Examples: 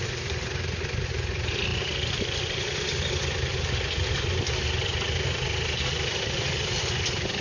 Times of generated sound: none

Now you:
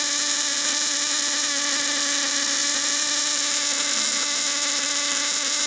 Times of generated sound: none

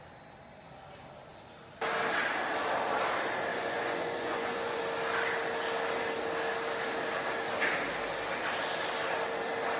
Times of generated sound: 3.5-4.8 (vocoder, Vocos)

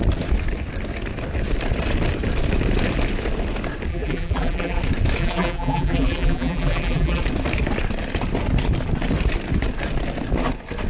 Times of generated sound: 3.9-4.8 (vocoder, BigVGAN v2); 5.2-7.2

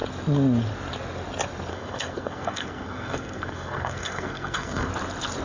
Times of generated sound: 1.7-4.9 (codec, SNAC)

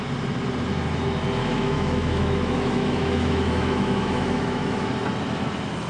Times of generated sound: 1.4-4.9 (autoencoder, DAC-VAE)

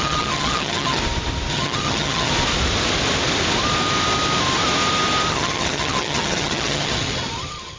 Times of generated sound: 0.0-1.0 (vocoder, HiFi-GAN); 1.5-2.3; 5.3-7.8

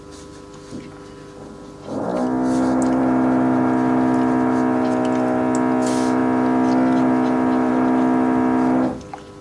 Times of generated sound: none